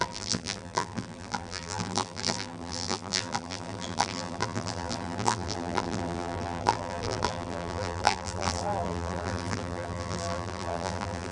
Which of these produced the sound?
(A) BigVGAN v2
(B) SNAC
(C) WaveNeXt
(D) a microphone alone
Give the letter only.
A